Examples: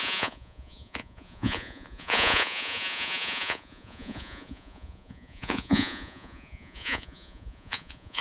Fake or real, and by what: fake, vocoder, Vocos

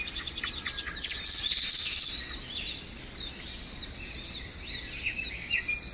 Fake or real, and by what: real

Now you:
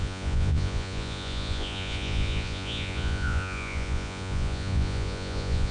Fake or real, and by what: fake, vocoder, Vocos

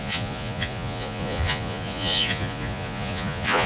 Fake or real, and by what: fake, vocoder, Vocos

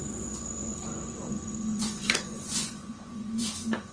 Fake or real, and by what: fake, vocoder, Vocos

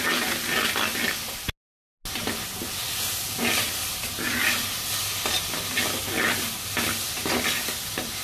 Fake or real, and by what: real